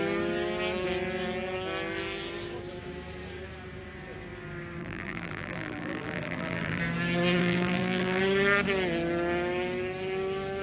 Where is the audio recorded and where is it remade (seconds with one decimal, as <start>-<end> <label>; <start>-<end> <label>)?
0.0-4.8 recorded; 4.8-6.8 remade; 6.8-7.4 recorded; 7.4-8.2 remade; 8.2-10.6 recorded

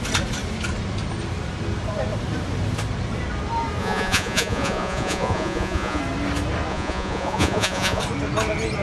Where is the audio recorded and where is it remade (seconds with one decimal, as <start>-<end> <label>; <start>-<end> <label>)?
0.0-3.8 recorded; 3.8-6.0 remade; 6.0-6.7 recorded; 6.7-8.0 remade; 8.0-8.8 recorded